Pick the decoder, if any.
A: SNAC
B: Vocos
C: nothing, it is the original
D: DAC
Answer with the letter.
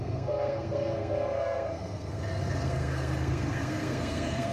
A